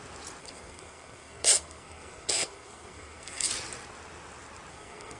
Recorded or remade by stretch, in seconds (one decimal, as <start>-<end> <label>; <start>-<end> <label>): 0.0-0.4 recorded; 0.4-3.5 remade; 3.5-4.7 recorded; 4.7-5.2 remade